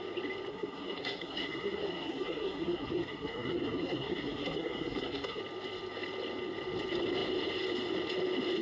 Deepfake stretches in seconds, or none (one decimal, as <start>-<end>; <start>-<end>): 0.5-5.4